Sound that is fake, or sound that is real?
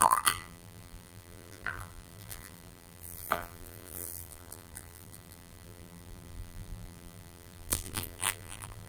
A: fake